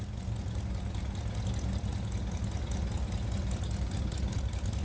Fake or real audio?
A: real